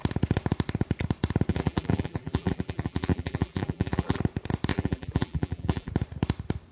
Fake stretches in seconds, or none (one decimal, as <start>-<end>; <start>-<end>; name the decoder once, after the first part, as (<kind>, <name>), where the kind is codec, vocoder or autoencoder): 1.5-4.2 (vocoder, BigVGAN v2); 4.7-5.9